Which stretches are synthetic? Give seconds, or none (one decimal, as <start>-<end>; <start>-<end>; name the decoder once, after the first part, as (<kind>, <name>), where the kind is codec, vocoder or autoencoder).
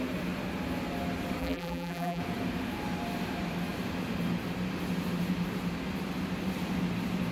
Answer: 1.4-2.2 (vocoder, BigVGAN v2)